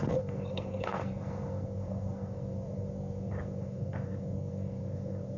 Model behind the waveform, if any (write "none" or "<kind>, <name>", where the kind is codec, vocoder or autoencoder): codec, SNAC